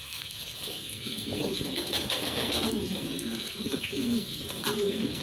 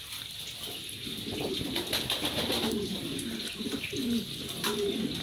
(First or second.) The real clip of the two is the second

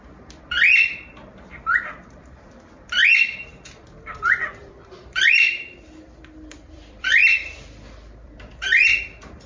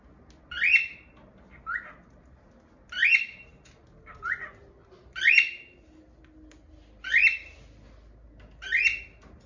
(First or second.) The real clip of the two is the second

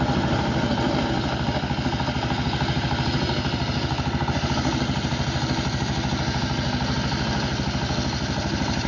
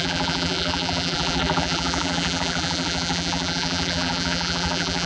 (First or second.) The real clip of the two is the first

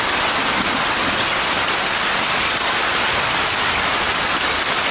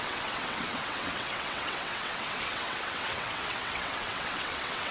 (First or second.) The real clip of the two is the first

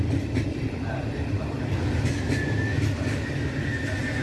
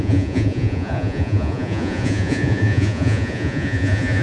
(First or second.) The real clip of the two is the first